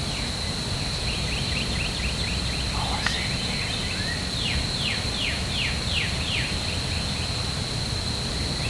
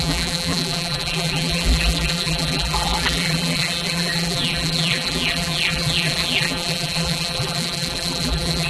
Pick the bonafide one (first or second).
first